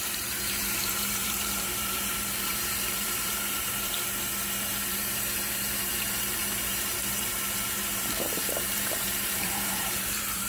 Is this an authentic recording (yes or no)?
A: no